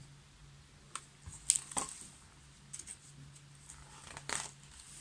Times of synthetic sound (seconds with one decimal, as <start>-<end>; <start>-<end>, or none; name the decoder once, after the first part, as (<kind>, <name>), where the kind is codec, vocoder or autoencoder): none